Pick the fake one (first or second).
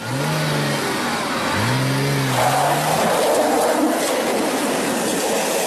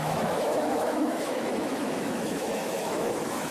second